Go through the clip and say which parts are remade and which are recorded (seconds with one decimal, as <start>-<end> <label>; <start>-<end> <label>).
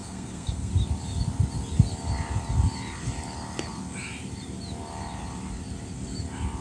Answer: 0.0-0.7 remade; 0.7-6.6 recorded